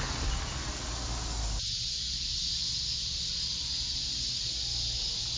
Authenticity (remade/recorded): recorded